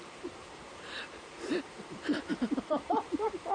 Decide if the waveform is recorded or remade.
remade